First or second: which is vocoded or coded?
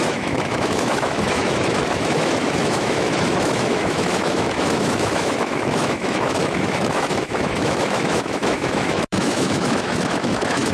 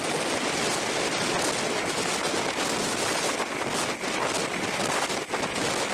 first